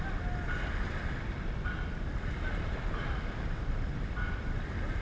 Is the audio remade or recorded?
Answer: recorded